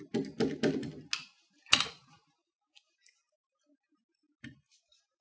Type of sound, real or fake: real